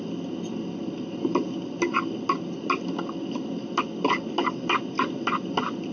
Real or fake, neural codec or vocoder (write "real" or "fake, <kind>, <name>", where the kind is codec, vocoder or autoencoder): real